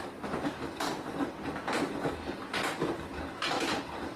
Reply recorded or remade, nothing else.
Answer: recorded